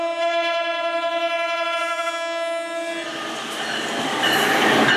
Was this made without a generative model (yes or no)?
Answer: yes